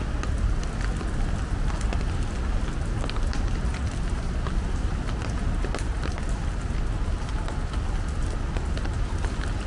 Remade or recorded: recorded